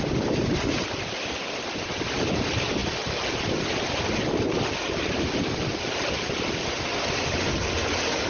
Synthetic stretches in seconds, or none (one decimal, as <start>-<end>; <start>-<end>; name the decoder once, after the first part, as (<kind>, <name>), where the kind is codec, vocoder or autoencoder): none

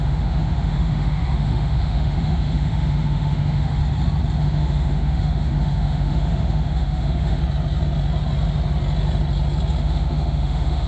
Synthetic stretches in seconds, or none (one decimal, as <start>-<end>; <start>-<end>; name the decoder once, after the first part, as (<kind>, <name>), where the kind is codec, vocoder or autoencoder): 0.0-3.8 (autoencoder, DAC-VAE); 4.4-7.4; 9.8-10.9

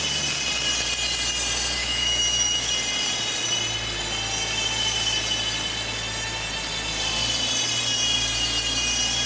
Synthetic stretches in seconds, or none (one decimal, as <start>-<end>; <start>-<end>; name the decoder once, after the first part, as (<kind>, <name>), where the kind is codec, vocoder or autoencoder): 1.8-2.7 (autoencoder, DAC-VAE)